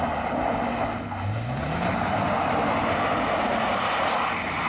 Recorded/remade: recorded